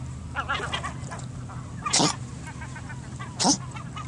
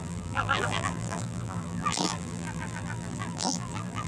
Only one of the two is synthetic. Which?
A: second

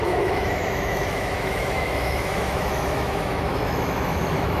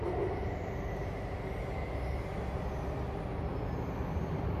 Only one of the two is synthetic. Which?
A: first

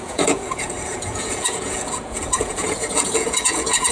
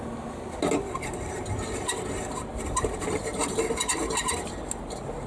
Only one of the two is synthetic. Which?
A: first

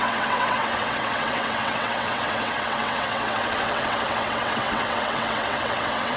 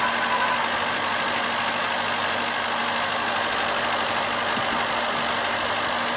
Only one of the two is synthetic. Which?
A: first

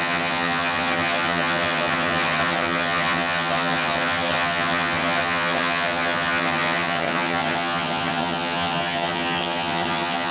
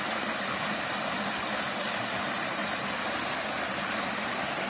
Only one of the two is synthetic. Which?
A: first